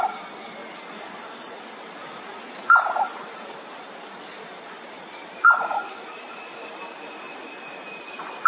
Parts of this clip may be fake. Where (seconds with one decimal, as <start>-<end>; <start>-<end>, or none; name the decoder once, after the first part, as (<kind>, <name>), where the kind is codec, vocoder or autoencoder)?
none